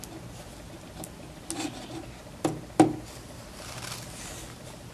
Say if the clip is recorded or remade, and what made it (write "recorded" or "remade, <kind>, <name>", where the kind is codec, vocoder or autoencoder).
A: recorded